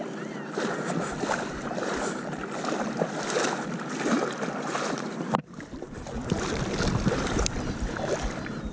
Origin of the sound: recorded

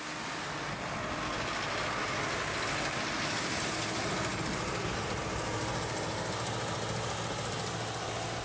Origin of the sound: recorded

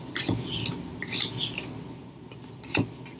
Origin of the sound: recorded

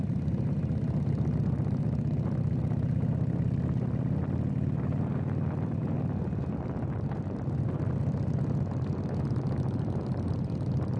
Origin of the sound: recorded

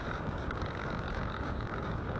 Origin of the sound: remade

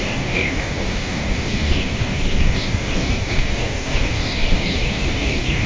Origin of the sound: remade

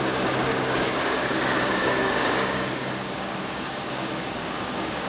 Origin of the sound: remade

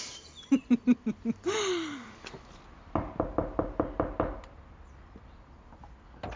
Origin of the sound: recorded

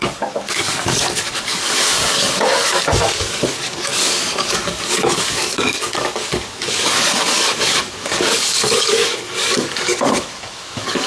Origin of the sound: remade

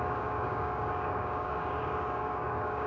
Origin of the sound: remade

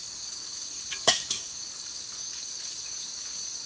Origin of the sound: remade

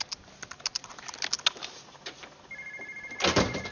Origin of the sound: recorded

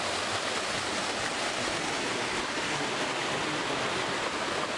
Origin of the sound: recorded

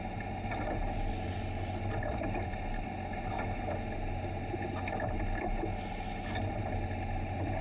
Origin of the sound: recorded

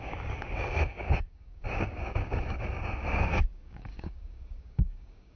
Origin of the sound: remade